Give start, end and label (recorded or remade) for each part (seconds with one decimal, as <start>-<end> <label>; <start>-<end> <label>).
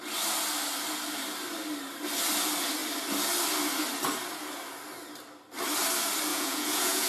0.0-6.3 recorded; 6.3-7.1 remade